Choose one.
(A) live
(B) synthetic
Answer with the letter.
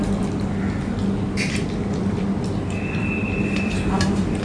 A